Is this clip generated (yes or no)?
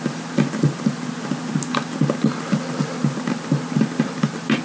no